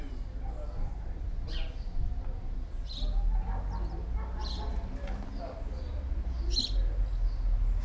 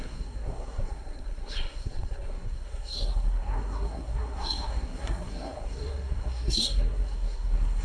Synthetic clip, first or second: second